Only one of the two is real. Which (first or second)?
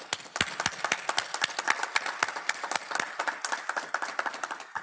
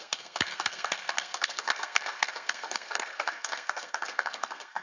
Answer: first